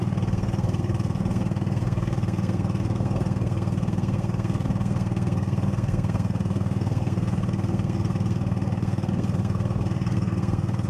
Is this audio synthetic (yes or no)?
yes